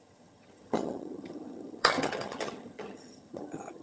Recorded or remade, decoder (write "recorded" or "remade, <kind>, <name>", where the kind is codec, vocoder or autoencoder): remade, vocoder, HiFi-GAN